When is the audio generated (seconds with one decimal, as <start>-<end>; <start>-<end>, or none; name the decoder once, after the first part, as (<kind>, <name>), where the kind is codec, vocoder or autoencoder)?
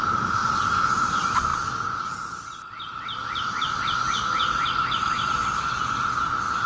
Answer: 0.0-0.4 (vocoder, BigVGAN v2); 1.0-6.7